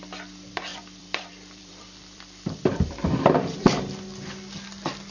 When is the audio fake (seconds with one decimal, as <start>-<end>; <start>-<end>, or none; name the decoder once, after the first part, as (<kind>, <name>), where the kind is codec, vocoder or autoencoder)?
0.7-3.8 (vocoder, BigVGAN v2)